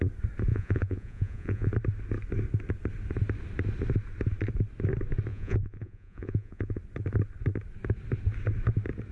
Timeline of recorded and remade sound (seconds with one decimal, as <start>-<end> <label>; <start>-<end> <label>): 0.0-0.5 recorded; 0.5-1.7 remade; 1.7-5.3 recorded; 5.3-6.8 remade; 6.8-9.1 recorded